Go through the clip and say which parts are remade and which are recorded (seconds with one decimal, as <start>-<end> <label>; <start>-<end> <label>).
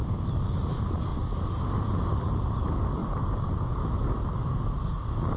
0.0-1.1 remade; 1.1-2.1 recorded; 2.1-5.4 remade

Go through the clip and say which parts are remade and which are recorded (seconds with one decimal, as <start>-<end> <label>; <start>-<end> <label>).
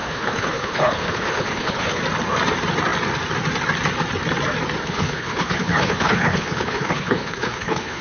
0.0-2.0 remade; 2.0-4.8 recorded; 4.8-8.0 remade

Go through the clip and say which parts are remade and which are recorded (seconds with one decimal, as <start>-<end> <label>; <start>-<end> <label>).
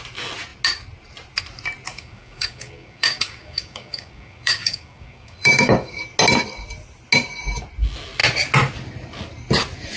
0.0-1.9 recorded; 1.9-6.0 remade; 6.0-10.0 recorded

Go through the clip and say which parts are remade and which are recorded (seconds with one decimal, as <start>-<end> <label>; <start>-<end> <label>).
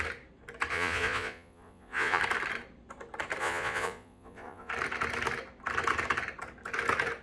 0.0-0.7 recorded; 0.7-2.2 remade; 2.2-3.4 recorded; 3.4-4.7 remade; 4.7-7.2 recorded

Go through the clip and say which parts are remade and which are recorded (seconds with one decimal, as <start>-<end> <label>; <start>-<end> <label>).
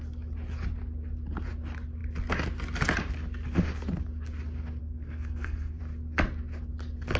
0.0-4.8 recorded; 4.8-5.8 remade; 5.8-7.2 recorded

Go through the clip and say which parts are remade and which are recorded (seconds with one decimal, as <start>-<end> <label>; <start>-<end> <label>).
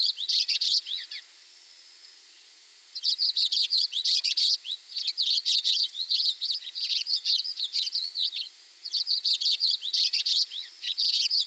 0.0-11.5 remade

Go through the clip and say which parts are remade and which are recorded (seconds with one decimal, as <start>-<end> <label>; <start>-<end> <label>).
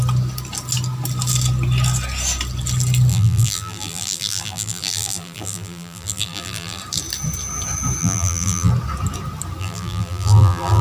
0.0-3.1 recorded; 3.1-6.8 remade; 6.8-8.0 recorded; 8.0-8.7 remade; 8.7-9.6 recorded; 9.6-10.8 remade